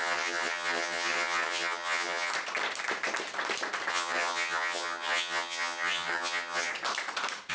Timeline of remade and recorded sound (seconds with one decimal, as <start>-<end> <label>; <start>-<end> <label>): 0.0-2.3 remade; 2.3-3.9 recorded; 3.9-6.7 remade; 6.7-7.5 recorded